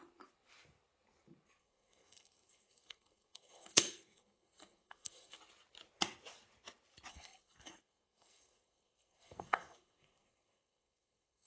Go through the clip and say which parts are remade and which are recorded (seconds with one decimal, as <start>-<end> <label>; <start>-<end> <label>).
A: 0.0-1.6 recorded; 1.6-5.4 remade; 5.4-7.1 recorded; 7.1-11.5 remade